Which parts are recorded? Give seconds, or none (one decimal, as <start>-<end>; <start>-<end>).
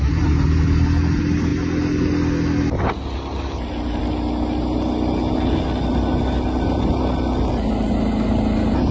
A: 0.0-8.9